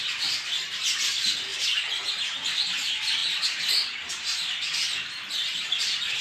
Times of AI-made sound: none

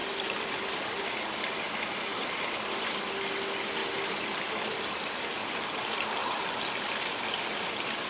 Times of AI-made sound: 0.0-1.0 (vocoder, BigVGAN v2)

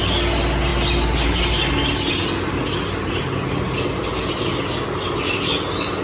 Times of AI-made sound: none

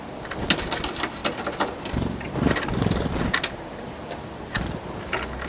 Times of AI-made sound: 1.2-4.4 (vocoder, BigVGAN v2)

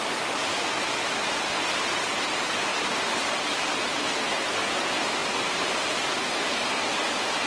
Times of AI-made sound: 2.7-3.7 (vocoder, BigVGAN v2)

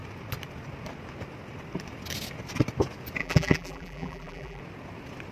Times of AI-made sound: 3.2-4.6 (vocoder, BigVGAN v2)